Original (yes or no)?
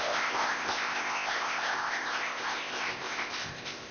no